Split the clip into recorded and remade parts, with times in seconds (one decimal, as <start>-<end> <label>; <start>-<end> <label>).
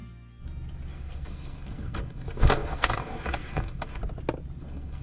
0.0-0.9 recorded; 0.9-4.0 remade; 4.0-4.6 recorded; 4.6-5.0 remade